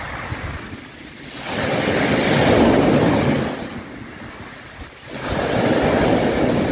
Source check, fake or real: real